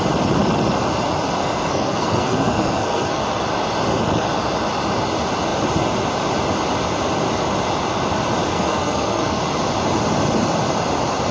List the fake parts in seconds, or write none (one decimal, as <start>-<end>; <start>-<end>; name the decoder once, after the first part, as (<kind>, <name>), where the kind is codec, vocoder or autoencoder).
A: 1.4-3.2 (codec, SNAC); 8.5-9.4